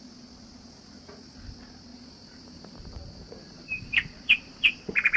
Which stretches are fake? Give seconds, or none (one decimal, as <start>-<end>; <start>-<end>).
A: 1.9-5.2